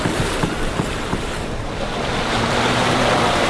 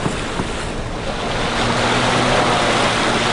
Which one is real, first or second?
second